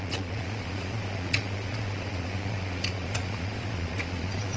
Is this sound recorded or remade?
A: remade